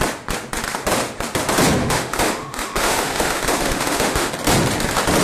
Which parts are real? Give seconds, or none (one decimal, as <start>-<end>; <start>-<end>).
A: 0.0-1.8; 4.3-5.2

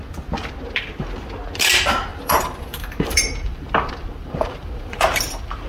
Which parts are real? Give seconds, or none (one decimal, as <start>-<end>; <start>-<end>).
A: 0.0-2.1

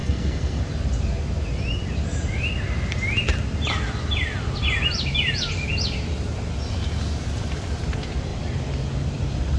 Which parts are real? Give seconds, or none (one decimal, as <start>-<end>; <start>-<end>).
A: 0.6-9.6

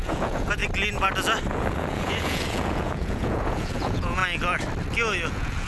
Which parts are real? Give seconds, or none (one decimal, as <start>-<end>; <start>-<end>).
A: 0.6-1.5; 4.2-5.3

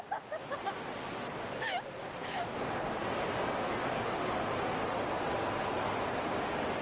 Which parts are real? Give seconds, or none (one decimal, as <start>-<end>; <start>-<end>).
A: 0.0-6.8

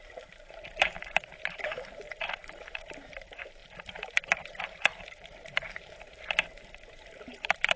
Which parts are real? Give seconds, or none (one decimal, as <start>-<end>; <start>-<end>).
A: none

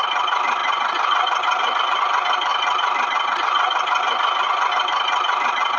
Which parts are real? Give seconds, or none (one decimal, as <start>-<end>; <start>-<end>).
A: 0.0-5.8

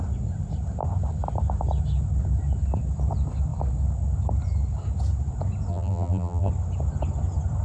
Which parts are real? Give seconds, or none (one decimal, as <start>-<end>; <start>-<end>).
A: 0.0-5.7; 6.5-7.6